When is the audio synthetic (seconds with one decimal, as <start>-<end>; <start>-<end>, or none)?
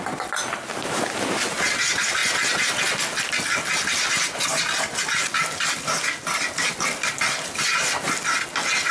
none